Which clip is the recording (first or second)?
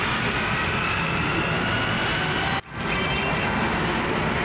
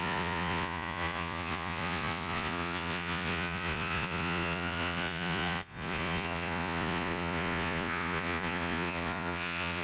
first